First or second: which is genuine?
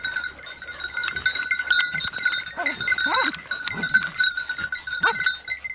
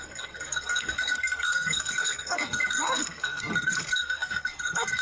first